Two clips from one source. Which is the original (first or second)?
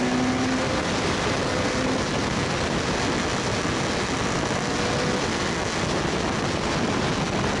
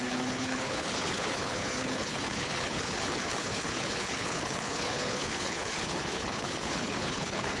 first